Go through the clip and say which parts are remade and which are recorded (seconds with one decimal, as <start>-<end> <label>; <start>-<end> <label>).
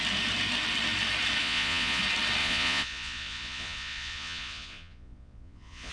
0.0-1.4 recorded; 1.4-2.0 remade; 2.0-2.4 recorded; 2.4-5.9 remade